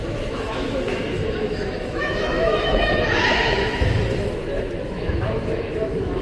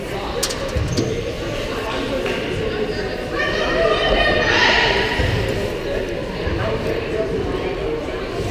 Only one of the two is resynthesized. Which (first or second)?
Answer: first